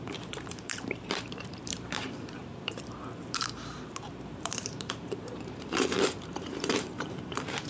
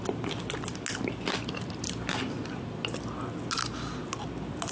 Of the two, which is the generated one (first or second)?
first